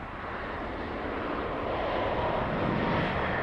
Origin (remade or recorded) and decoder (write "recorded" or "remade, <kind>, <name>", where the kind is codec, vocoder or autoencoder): recorded